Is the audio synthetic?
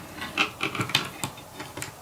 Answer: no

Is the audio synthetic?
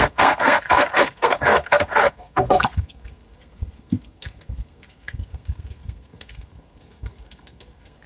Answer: yes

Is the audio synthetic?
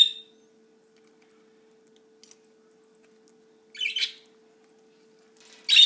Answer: no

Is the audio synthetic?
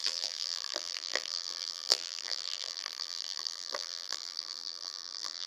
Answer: yes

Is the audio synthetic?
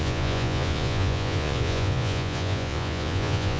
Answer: yes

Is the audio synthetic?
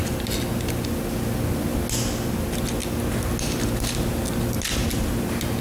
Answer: no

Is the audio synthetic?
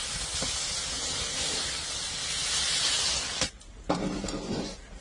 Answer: no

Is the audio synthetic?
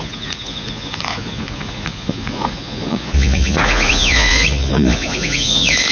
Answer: yes